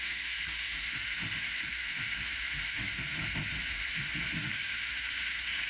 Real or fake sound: fake